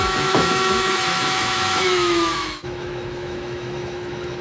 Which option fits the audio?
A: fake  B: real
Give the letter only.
A